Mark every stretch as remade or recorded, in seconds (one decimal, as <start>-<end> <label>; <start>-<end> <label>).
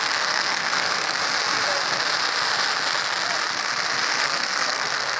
0.0-1.2 remade; 1.2-4.2 recorded; 4.2-5.2 remade